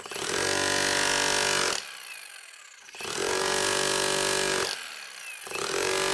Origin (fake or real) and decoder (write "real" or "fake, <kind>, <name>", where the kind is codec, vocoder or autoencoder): real